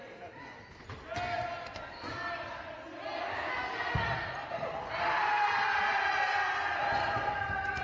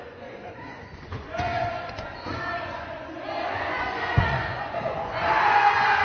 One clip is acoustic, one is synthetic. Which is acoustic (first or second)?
first